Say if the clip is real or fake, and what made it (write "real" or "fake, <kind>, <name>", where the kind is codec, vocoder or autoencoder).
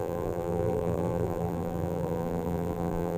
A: fake, vocoder, BigVGAN v2